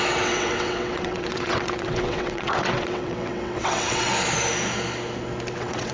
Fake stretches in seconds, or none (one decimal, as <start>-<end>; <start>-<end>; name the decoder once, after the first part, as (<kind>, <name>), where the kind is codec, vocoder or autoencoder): 0.0-4.1 (vocoder, WaveNeXt); 5.5-5.9